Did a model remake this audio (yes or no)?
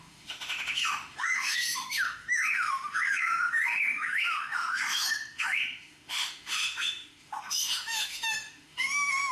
yes